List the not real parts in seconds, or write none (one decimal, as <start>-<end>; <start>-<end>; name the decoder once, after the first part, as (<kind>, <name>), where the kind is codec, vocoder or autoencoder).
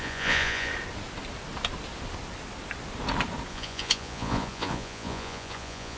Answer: 0.0-0.7 (vocoder, Vocos); 3.5-6.0